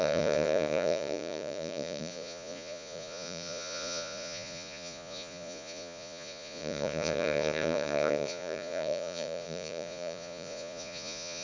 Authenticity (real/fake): fake